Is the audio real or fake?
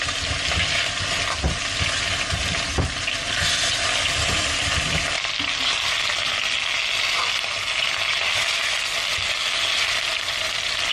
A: real